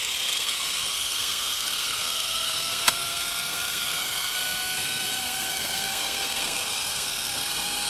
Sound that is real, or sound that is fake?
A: fake